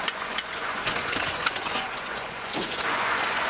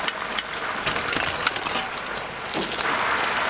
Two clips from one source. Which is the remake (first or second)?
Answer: first